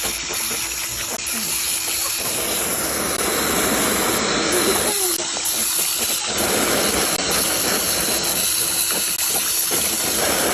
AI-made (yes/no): no